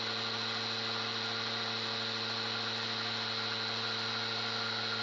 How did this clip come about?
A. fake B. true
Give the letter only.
B